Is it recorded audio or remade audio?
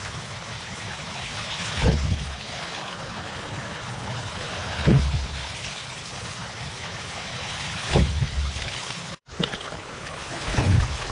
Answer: remade